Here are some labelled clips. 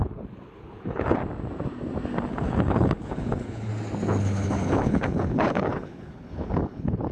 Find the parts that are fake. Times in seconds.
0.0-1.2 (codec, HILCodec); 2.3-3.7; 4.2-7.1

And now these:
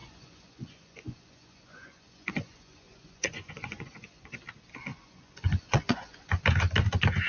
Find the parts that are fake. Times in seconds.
0.0-4.4 (vocoder, Vocos); 4.9-6.4

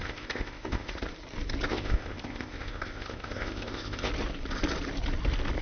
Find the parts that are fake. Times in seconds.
0.0-0.9 (codec, ZipCodec); 1.7-4.1

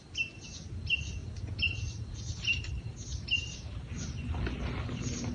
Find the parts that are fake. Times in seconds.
1.2-4.4 (vocoder, BigVGAN v2)